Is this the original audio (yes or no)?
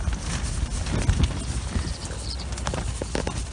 yes